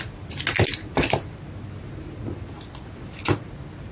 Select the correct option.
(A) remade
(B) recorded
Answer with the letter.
B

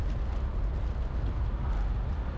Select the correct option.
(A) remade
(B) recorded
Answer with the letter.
B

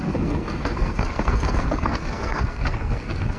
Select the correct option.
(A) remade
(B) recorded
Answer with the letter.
A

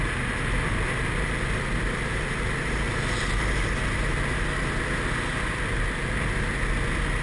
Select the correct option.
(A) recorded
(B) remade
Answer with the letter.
A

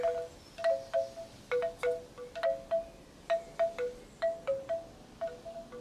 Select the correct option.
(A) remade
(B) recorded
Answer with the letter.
B